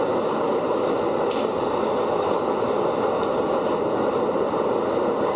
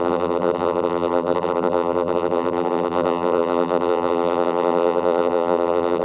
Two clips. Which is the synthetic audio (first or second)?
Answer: second